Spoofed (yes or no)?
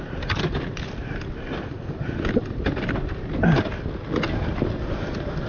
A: no